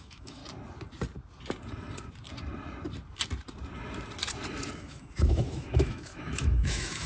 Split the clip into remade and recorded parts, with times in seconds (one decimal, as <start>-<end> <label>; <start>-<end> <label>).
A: 0.0-0.4 remade; 0.4-4.7 recorded; 4.7-7.1 remade